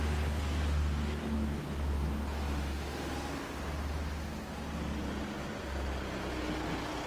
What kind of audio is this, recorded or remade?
recorded